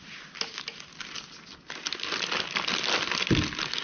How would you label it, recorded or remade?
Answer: recorded